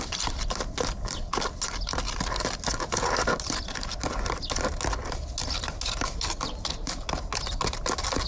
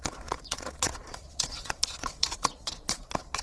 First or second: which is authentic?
first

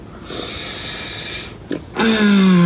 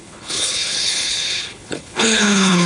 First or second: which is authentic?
first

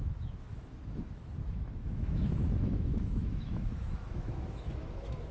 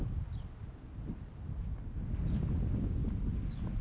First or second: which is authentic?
second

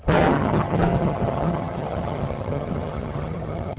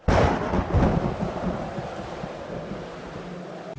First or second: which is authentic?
second